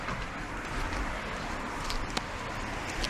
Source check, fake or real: real